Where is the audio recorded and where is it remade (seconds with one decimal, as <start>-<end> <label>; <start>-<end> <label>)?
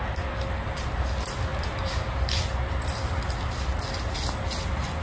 0.0-5.0 recorded